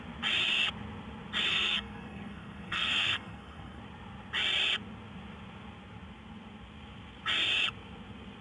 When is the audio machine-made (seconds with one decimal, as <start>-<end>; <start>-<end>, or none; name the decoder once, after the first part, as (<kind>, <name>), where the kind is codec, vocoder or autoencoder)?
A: 1.5-3.8 (codec, SNAC)